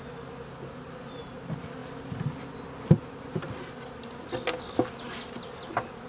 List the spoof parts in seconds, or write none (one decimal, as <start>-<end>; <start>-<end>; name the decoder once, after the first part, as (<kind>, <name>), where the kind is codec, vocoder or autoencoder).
0.8-1.4 (vocoder, BigVGAN v2)